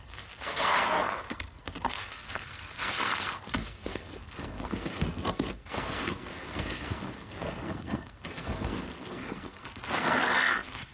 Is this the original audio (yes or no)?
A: no